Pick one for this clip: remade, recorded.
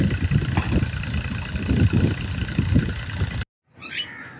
recorded